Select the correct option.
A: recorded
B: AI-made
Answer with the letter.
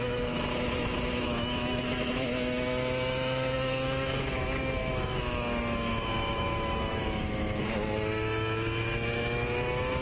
B